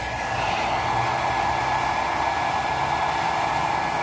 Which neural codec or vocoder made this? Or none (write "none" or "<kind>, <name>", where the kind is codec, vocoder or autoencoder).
none